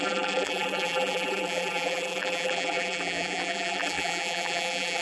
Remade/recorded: remade